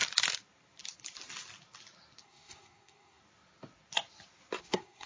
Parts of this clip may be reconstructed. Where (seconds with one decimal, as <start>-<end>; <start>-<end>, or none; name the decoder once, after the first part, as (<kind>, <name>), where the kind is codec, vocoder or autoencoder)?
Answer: 2.2-3.2 (codec, SNAC); 4.6-5.1